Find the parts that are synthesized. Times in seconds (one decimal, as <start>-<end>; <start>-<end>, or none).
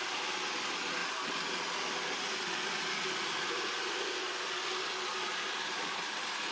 none